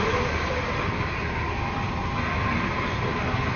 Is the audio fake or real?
real